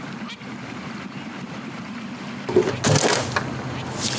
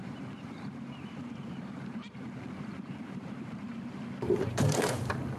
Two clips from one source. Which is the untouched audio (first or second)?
first